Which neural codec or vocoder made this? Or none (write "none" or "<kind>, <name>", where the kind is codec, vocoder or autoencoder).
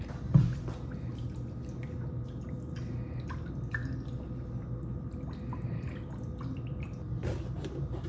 none